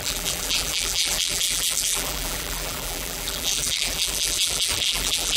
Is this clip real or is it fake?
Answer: fake